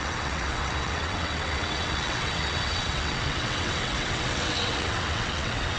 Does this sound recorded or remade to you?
remade